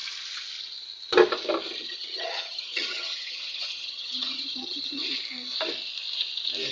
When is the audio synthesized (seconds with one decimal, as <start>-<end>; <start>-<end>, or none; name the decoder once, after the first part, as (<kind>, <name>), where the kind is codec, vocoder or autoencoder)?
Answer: 1.8-5.0 (vocoder, HiFi-GAN)